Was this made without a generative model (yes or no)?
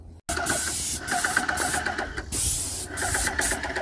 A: yes